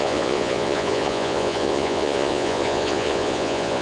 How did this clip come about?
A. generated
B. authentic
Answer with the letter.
A